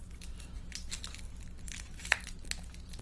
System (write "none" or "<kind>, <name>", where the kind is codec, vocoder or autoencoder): none